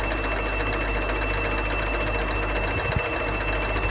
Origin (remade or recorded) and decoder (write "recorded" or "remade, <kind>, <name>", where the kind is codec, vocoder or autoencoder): recorded